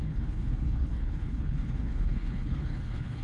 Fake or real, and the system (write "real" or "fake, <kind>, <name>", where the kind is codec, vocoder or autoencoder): fake, codec, HILCodec